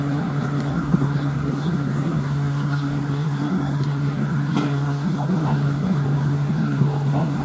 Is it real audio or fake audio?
fake